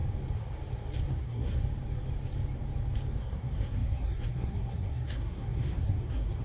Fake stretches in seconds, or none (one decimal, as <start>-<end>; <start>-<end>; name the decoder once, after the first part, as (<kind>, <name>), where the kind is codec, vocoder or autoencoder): 1.1-1.6 (codec, SNAC); 3.2-6.4